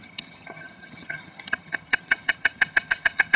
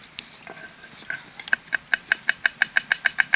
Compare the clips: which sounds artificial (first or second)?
first